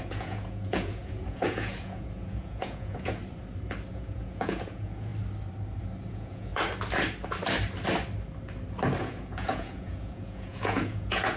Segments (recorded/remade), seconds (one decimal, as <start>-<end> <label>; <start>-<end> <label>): 0.0-3.2 remade; 3.2-3.9 recorded; 3.9-5.1 remade; 5.1-6.1 recorded; 6.1-6.5 remade; 6.5-9.0 recorded; 9.0-11.4 remade